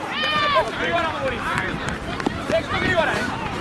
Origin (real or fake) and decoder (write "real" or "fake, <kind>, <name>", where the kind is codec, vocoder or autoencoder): fake, vocoder, BigVGAN v2